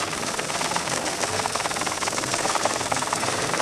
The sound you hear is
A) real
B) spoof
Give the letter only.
B